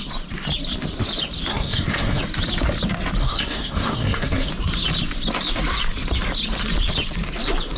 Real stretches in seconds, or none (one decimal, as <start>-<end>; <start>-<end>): 0.0-1.5; 2.2-3.2; 4.5-7.8